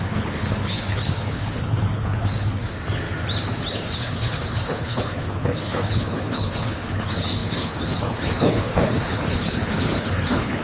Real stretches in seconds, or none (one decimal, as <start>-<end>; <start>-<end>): 2.7-3.7